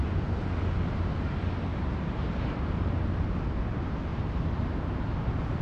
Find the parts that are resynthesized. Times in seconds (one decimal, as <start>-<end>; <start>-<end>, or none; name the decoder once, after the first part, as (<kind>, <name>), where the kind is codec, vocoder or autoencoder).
1.7-2.5 (vocoder, BigVGAN v2); 4.1-5.1